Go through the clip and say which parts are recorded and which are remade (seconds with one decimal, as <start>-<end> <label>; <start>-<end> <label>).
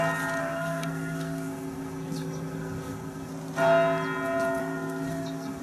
0.0-0.4 recorded; 0.4-3.3 remade; 3.3-4.6 recorded; 4.6-5.6 remade